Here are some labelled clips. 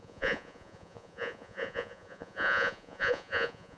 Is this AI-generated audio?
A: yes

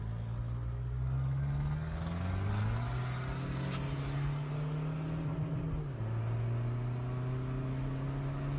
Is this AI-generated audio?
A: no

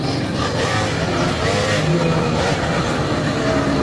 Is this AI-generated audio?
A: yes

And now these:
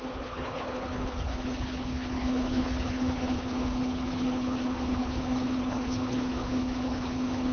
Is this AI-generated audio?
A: yes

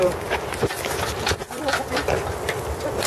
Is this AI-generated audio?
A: no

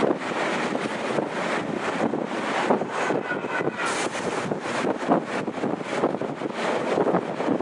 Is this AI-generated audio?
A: no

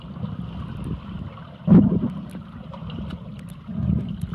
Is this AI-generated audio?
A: yes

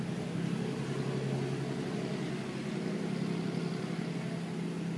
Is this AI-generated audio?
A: no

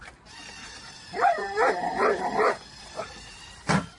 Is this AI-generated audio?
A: yes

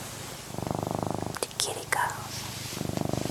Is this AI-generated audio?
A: no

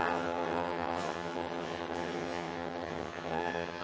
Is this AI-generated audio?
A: yes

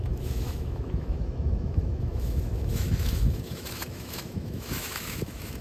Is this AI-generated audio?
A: yes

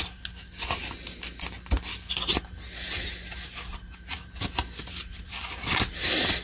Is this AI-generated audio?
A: no